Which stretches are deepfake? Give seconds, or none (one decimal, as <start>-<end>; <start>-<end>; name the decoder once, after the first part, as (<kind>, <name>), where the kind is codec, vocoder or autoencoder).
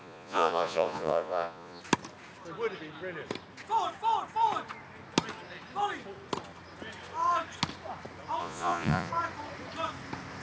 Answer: 0.0-1.8 (vocoder, Vocos); 8.4-9.1